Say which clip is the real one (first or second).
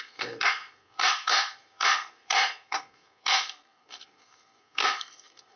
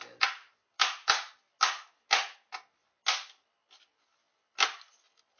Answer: second